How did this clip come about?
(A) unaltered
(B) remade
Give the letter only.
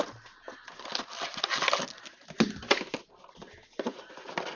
A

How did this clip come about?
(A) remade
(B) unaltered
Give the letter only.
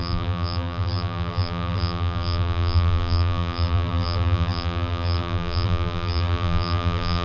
A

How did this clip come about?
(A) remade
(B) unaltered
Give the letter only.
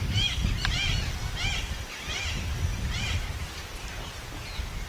B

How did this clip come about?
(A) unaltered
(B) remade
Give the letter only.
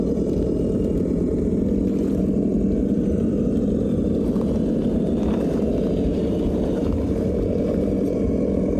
A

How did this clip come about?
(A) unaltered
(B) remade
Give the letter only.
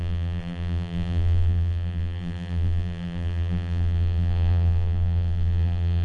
B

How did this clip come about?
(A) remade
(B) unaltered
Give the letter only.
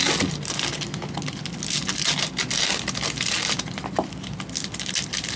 B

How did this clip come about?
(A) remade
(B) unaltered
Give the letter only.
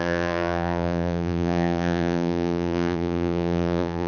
A